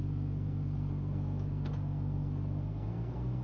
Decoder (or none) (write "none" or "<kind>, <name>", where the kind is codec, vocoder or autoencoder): codec, SNAC